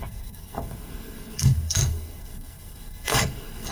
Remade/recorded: remade